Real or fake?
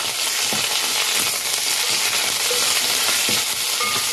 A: real